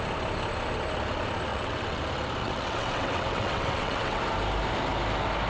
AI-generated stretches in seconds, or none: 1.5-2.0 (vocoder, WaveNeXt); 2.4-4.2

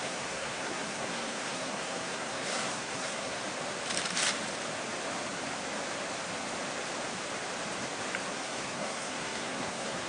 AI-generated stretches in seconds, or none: 0.0-3.4 (codec, SNAC); 8.3-10.1

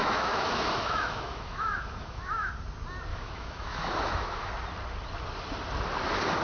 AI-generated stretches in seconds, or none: 0.0-2.5 (autoencoder, DAC-VAE); 3.1-4.5

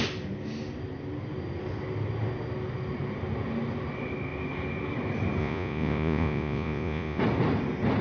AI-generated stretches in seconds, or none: 5.4-7.2 (vocoder, Vocos)

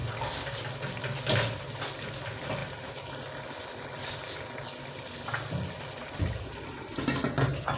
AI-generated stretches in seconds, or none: none

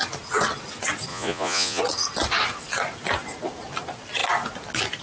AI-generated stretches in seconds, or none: 1.1-1.8 (vocoder, Vocos)